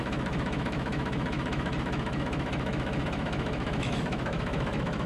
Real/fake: fake